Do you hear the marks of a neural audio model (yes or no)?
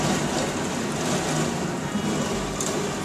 no